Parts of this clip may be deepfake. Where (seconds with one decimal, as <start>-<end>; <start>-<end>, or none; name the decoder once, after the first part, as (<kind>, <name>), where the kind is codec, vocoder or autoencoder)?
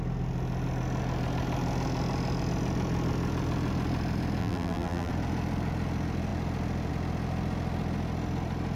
4.4-5.1 (vocoder, BigVGAN v2)